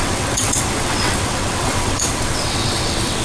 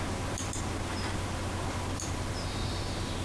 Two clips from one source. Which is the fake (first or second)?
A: first